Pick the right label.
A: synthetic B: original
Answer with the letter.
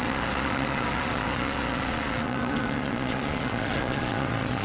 A